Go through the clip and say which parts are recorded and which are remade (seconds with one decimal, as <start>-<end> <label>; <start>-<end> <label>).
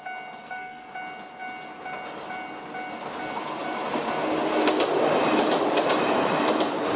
0.0-0.4 recorded; 0.4-0.9 remade; 0.9-7.0 recorded